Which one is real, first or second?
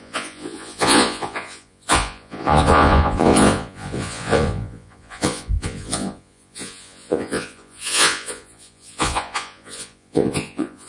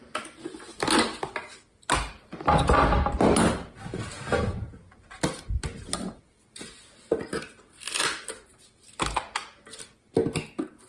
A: second